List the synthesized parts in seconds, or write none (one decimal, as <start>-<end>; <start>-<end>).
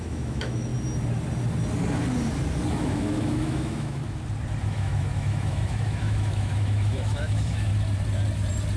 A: 0.0-0.7; 2.7-4.0; 4.6-7.7